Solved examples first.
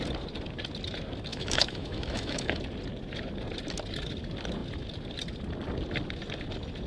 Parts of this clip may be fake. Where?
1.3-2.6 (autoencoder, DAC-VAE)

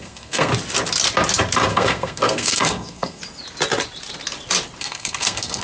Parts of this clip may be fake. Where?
0.0-0.5 (codec, SNAC); 1.7-3.2; 4.8-5.6

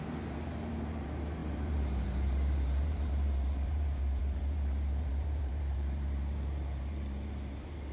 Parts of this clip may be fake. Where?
0.0-7.9 (vocoder, BigVGAN v2)